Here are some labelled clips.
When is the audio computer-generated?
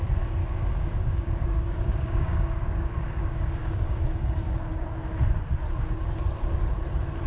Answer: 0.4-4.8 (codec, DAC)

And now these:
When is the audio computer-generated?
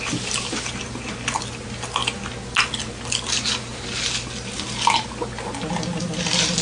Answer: none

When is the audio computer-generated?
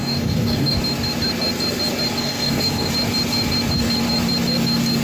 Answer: 0.0-0.8 (codec, DAC); 2.2-2.9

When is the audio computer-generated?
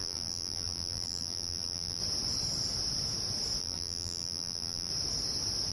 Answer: 0.0-2.0 (vocoder, BigVGAN v2); 3.6-4.9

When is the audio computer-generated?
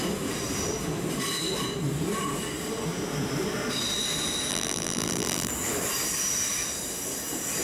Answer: 4.5-5.5 (vocoder, BigVGAN v2)